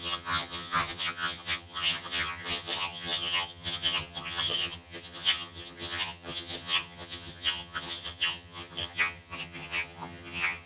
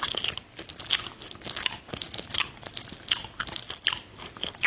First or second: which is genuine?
second